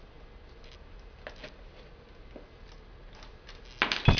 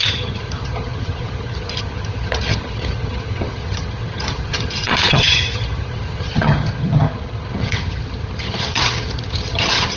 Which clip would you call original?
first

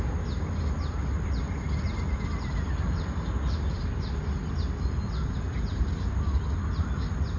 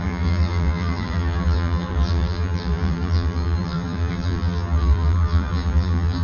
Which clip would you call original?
first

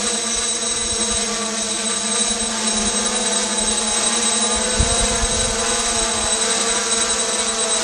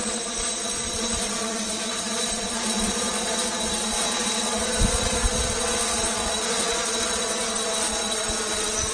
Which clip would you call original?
first